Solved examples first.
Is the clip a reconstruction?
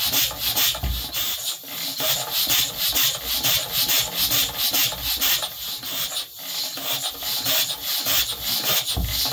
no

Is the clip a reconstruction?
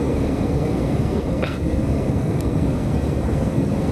yes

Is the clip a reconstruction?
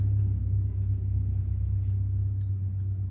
no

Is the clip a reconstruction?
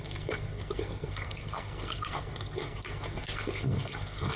yes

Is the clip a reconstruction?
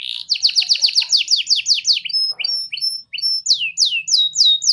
no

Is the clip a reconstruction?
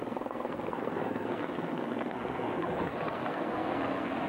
yes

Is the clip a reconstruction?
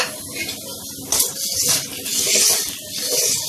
no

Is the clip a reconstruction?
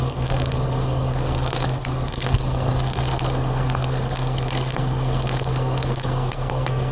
yes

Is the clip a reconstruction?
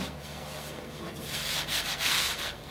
yes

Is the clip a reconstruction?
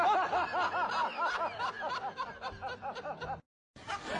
no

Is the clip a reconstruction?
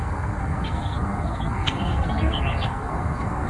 yes